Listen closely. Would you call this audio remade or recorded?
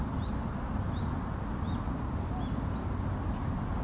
recorded